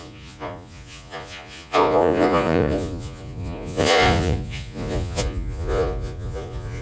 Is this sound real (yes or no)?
no